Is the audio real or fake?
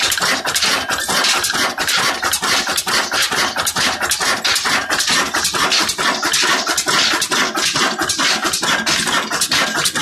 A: real